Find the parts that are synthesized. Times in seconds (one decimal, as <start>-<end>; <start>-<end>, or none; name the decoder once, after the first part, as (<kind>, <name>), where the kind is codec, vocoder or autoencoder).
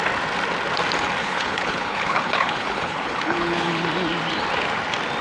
1.2-3.8 (codec, HILCodec)